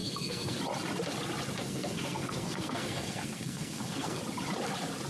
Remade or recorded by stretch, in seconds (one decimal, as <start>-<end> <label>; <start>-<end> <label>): 0.0-0.6 remade; 0.6-1.6 recorded; 1.6-4.2 remade; 4.2-5.1 recorded